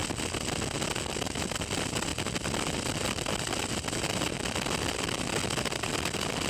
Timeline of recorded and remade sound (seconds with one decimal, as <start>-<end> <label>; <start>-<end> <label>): 0.0-6.5 recorded